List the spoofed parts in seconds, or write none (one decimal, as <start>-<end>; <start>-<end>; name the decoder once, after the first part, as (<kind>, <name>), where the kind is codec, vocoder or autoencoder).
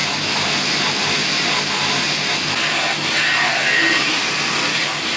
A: none